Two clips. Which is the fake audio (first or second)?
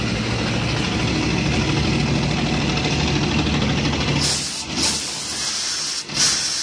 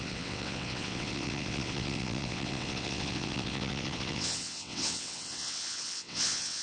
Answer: second